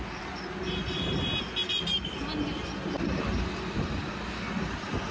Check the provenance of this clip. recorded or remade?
recorded